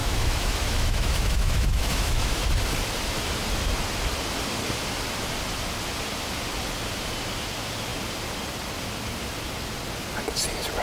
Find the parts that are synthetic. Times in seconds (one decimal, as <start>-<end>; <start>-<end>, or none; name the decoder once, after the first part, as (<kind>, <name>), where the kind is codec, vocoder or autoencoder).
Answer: 0.0-2.4 (autoencoder, DAC-VAE)